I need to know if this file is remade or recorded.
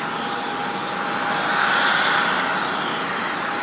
recorded